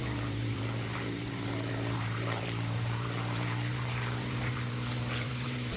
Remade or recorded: remade